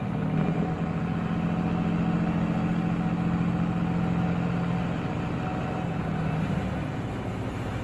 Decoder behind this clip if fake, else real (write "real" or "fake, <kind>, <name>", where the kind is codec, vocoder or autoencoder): real